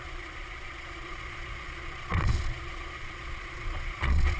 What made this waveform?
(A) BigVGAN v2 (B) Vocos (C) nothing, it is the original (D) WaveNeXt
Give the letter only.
B